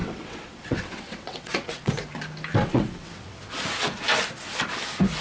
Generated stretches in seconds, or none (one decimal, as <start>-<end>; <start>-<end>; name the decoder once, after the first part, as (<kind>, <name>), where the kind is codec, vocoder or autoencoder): 0.0-1.9 (vocoder, WaveNeXt); 2.6-3.4